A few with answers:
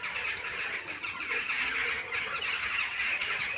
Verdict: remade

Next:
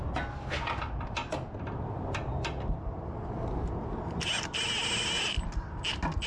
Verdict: recorded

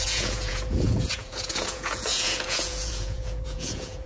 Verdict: remade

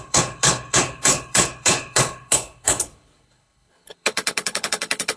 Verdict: remade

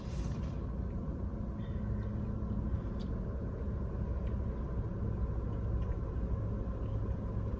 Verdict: recorded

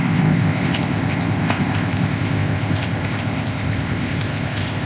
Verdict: remade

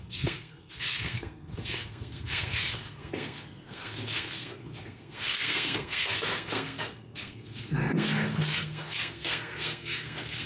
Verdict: remade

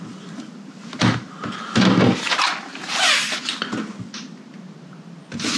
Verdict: recorded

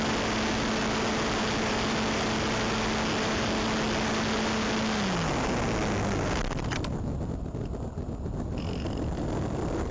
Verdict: recorded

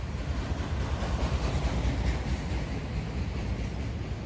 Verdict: recorded